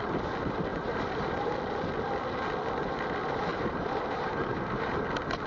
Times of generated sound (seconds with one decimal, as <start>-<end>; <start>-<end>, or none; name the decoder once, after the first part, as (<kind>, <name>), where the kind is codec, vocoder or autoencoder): 0.7-1.5 (vocoder, BigVGAN v2); 3.5-5.0